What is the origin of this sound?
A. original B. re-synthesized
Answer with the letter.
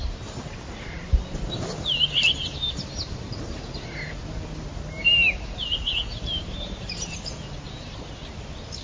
A